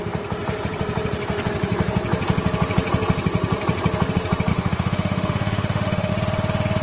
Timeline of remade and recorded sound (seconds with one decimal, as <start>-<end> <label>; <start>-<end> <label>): 0.0-4.5 recorded; 4.5-6.1 remade; 6.1-6.8 recorded